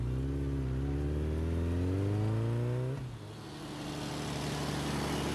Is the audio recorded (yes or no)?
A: yes